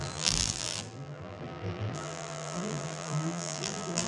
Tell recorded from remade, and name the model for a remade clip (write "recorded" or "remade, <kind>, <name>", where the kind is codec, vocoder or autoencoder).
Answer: remade, vocoder, BigVGAN v2